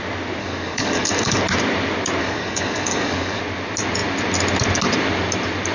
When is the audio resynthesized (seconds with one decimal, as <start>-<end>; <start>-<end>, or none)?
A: 0.4-1.4; 2.2-3.4